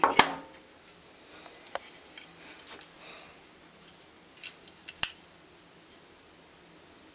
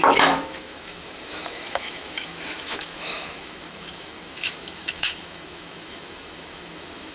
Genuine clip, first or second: first